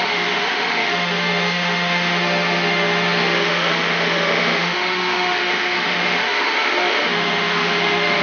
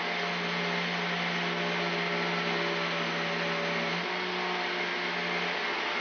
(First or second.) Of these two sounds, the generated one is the first